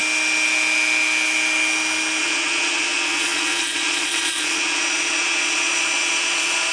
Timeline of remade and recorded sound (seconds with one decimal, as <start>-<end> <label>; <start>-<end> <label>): 0.0-2.2 recorded; 2.2-6.7 remade